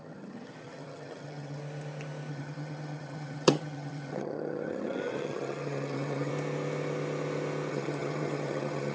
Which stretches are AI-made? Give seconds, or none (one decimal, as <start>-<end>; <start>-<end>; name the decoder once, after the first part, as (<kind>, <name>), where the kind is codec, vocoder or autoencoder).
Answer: 0.0-1.6 (vocoder, HiFi-GAN); 2.3-6.3; 7.7-8.9